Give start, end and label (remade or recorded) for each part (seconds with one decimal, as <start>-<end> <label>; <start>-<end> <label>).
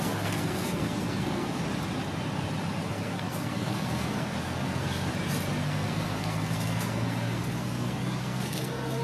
0.0-1.6 remade; 1.6-2.9 recorded; 2.9-5.1 remade; 5.1-5.6 recorded; 5.6-9.0 remade